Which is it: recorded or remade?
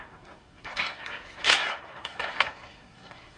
remade